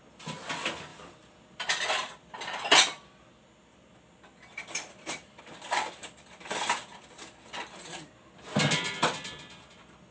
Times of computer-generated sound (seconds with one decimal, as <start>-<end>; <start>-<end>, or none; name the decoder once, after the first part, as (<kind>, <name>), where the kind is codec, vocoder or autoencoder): 0.9-5.4 (vocoder, BigVGAN v2); 6.9-7.5